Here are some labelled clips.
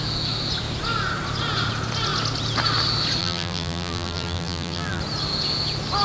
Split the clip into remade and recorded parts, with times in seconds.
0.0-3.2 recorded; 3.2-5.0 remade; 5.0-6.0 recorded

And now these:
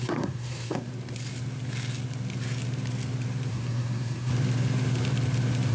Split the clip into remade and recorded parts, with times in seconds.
0.0-0.9 remade; 0.9-3.5 recorded; 3.5-4.3 remade; 4.3-5.7 recorded

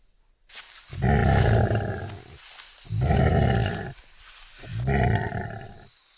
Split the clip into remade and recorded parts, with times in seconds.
0.0-3.6 recorded; 3.6-4.3 remade; 4.3-6.2 recorded

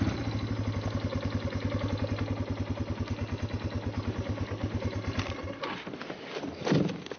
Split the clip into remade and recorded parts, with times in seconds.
0.0-7.2 recorded

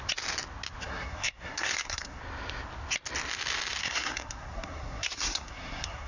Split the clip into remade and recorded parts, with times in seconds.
0.0-0.8 recorded; 0.8-2.2 remade; 2.2-3.8 recorded; 3.8-6.1 remade

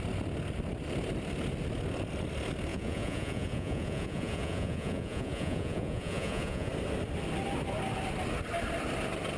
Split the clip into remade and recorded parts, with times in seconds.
0.0-2.7 recorded; 2.7-6.7 remade; 6.7-9.4 recorded